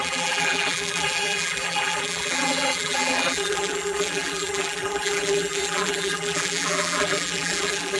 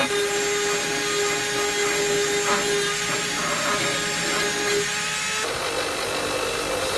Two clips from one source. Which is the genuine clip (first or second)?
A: second